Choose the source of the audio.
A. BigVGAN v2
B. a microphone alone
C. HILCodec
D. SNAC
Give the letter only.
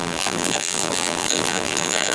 A